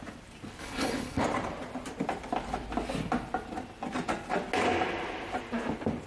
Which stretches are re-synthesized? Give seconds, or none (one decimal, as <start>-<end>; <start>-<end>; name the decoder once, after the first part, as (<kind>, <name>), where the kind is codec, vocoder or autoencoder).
0.6-1.2 (codec, HILCodec)